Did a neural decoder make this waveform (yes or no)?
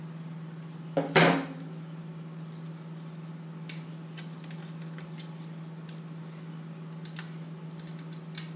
no